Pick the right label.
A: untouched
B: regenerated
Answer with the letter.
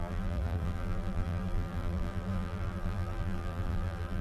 B